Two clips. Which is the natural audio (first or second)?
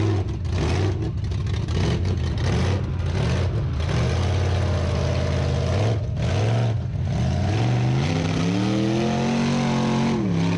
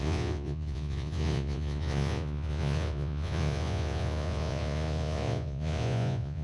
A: first